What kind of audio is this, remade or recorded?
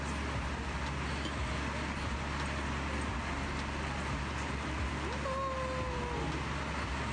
recorded